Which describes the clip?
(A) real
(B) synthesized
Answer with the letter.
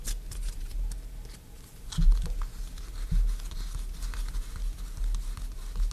A